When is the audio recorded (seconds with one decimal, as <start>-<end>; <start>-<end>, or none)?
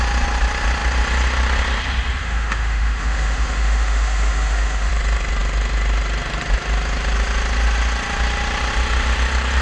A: 0.0-2.2; 4.9-9.6